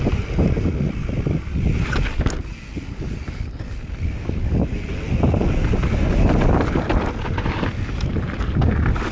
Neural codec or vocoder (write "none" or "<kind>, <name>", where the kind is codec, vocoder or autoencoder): none